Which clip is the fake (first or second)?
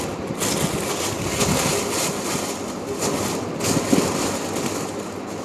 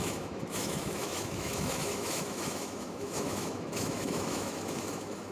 second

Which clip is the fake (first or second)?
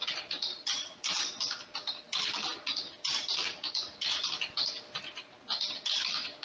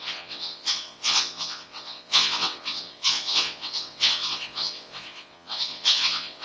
second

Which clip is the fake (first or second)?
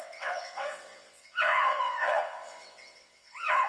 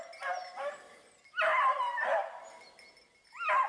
first